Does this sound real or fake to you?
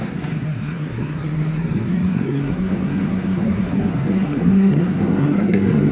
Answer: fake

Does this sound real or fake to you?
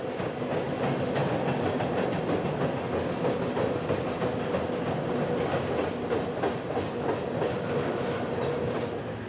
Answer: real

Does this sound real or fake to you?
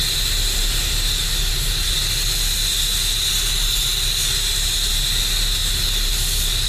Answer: real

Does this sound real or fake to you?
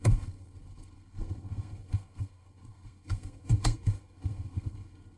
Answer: fake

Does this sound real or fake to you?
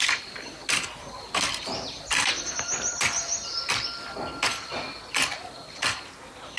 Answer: real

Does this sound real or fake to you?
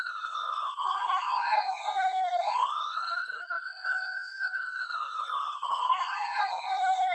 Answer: fake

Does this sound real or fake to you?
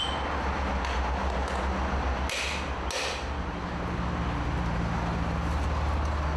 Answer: real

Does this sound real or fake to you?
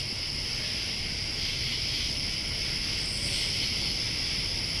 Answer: real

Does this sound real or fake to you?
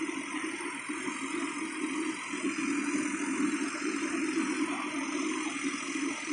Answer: real